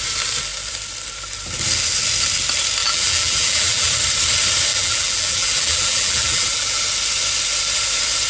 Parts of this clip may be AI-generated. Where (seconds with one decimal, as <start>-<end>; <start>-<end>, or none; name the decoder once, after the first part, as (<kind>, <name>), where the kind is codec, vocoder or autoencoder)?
2.8-3.9 (vocoder, BigVGAN v2); 4.7-6.8